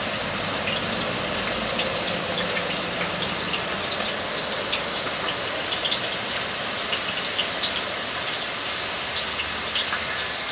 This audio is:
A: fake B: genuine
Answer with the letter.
B